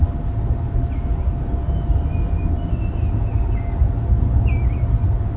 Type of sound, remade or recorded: recorded